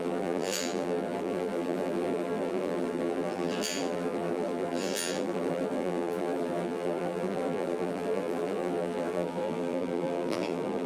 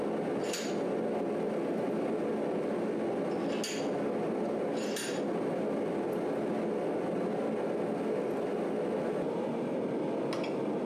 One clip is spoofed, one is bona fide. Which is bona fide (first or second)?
second